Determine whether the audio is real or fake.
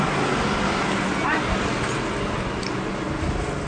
real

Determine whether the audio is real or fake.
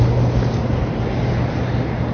real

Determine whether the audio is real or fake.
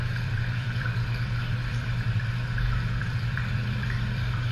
fake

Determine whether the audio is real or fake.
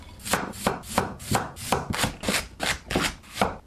fake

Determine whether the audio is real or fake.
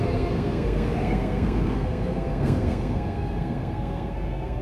fake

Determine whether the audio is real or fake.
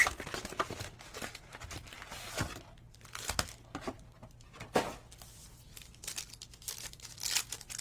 real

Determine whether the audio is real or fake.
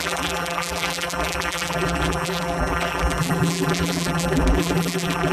fake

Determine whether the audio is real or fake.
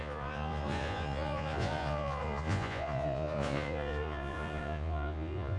fake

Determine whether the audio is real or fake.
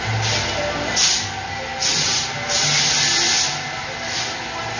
real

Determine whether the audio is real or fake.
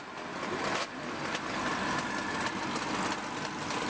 real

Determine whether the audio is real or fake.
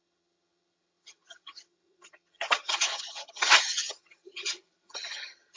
fake